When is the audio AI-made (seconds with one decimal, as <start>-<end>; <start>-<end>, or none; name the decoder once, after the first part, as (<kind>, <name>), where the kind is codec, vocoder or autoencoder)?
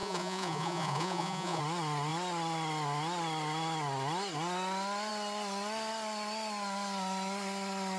0.0-1.6 (vocoder, Vocos)